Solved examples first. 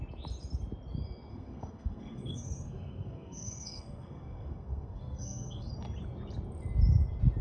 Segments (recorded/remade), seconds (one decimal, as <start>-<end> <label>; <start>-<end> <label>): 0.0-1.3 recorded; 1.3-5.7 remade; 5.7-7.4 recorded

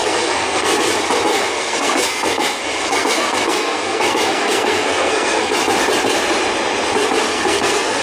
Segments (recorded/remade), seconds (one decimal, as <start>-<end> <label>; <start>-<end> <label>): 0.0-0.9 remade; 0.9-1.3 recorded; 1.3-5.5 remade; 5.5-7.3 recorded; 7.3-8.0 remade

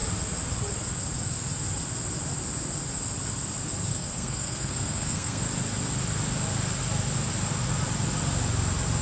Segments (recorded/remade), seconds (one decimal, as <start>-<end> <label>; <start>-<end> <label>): 0.0-3.9 recorded; 3.9-5.4 remade; 5.4-9.0 recorded

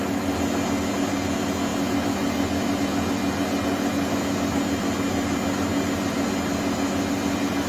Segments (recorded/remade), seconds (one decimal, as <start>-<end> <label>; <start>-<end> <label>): 0.0-7.7 recorded